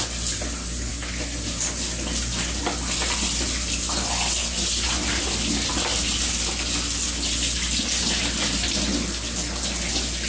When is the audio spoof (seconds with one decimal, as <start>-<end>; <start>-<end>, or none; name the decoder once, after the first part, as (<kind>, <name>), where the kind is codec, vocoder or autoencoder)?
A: none